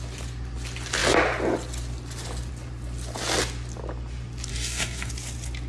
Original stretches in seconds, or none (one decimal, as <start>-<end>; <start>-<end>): 0.0-4.5; 5.1-5.7